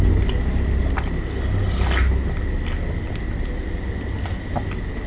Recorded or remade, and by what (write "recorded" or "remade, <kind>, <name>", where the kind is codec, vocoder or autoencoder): recorded